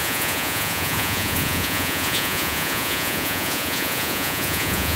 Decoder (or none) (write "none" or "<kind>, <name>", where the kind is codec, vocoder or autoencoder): vocoder, Vocos